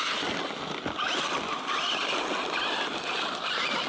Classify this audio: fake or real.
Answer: real